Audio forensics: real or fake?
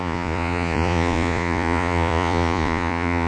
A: fake